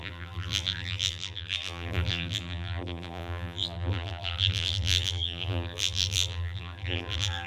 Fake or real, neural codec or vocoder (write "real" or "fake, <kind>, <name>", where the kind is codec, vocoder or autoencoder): fake, vocoder, BigVGAN v2